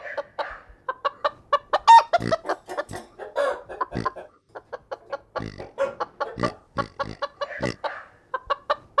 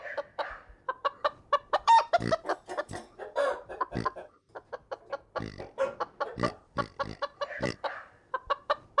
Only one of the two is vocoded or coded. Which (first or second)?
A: second